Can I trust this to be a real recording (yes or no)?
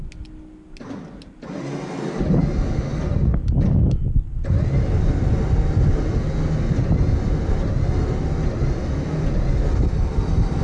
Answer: yes